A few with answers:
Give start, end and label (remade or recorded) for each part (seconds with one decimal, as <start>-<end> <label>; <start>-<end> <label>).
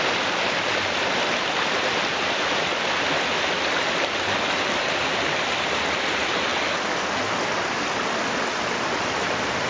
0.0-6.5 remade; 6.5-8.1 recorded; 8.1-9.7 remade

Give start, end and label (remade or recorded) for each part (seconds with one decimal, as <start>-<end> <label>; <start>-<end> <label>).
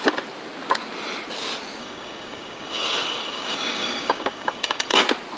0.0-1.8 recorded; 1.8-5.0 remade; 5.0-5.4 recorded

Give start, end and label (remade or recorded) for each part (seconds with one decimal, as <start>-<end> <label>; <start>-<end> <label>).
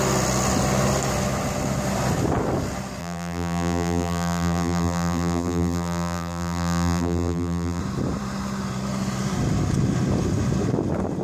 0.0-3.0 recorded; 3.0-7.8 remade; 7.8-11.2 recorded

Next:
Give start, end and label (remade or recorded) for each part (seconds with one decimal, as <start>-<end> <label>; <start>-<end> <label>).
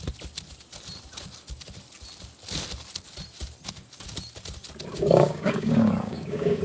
0.0-4.9 recorded; 4.9-6.6 remade